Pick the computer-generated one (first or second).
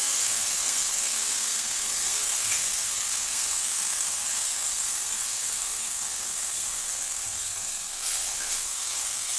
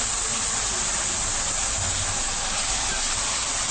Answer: first